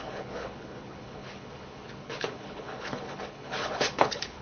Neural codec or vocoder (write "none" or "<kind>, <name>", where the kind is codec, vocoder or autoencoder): codec, HILCodec